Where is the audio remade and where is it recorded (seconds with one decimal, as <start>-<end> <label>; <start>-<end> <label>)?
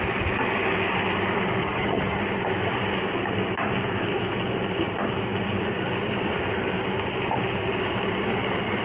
0.0-1.6 recorded; 1.6-2.2 remade; 2.2-8.8 recorded